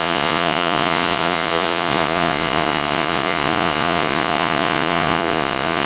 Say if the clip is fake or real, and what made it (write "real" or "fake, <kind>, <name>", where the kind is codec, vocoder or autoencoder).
fake, vocoder, Vocos